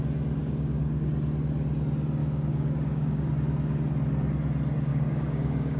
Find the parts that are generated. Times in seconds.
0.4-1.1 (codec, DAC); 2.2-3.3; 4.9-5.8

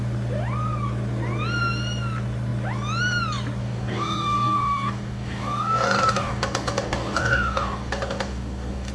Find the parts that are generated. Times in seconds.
3.6-8.9 (codec, DAC)

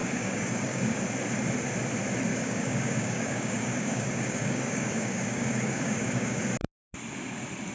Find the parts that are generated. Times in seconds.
0.0-1.0 (codec, DAC); 2.3-6.4

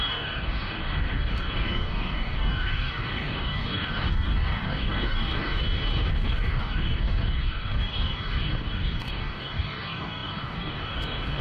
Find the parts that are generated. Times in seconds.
0.0-5.6 (codec, DAC); 6.1-11.4